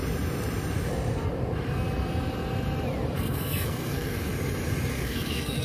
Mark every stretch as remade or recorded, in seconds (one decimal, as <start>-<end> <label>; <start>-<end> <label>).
0.0-3.2 recorded; 3.2-4.3 remade; 4.3-4.9 recorded; 4.9-5.6 remade